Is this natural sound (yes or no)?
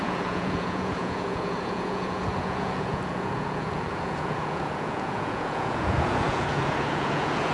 no